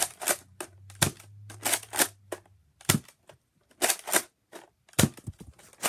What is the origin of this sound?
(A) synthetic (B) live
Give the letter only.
B